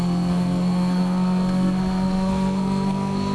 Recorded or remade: remade